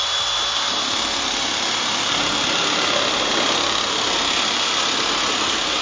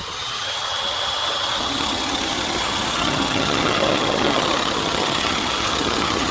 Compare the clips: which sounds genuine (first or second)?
first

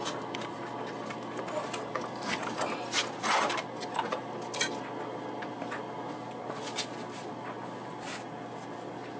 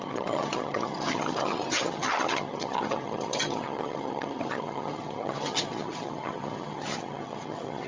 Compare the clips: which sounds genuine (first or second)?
first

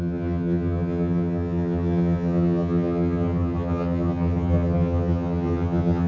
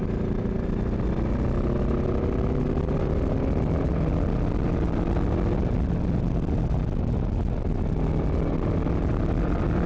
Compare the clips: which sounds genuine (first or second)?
second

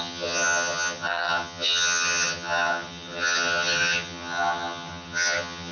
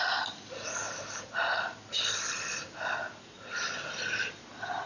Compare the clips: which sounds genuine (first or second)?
second